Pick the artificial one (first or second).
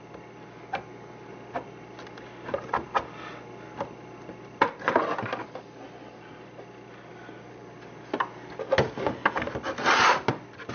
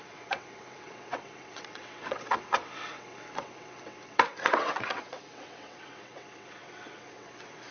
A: second